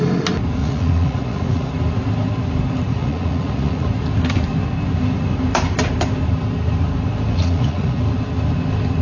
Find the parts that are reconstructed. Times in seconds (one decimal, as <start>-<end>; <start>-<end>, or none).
0.6-1.7; 2.9-3.9; 7.3-8.0